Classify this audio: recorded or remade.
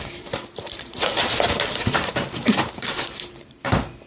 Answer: remade